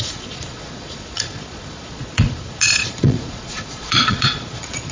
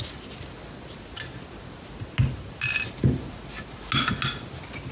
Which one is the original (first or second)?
second